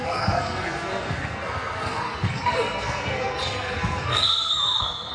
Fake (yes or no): yes